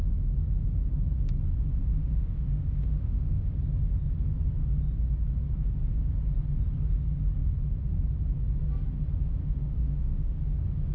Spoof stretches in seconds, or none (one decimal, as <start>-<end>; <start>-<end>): 1.8-3.6; 9.4-10.4